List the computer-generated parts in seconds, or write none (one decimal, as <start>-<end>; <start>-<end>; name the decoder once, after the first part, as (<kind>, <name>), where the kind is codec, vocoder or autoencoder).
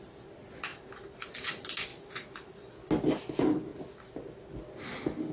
0.7-1.2 (vocoder, BigVGAN v2); 1.9-2.7